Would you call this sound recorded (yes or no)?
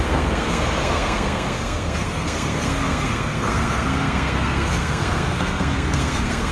no